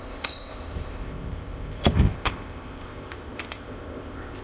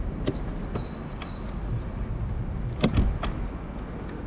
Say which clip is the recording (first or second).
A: second